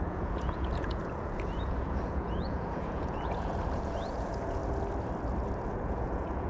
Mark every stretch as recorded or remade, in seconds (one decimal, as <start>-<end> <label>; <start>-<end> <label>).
0.0-4.6 remade; 4.6-5.7 recorded; 5.7-6.5 remade